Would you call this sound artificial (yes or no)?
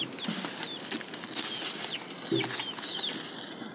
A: no